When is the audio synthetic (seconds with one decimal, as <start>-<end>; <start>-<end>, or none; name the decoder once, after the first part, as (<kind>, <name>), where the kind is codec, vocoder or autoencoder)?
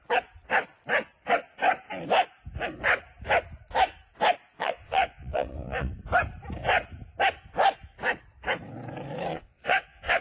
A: 4.6-5.9 (vocoder, WaveNeXt); 9.3-10.2